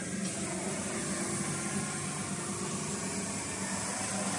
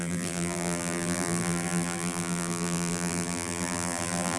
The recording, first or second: first